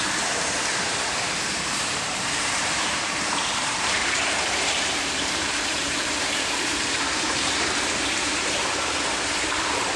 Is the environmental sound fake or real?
fake